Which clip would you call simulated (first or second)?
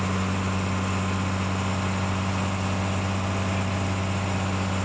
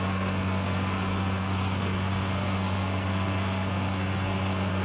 second